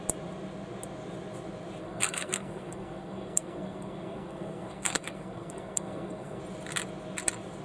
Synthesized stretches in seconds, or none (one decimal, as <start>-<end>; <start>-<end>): 1.8-6.4